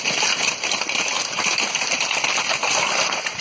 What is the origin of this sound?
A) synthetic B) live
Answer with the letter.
B